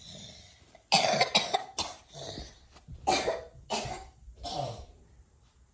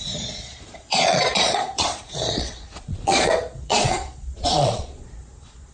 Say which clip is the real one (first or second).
first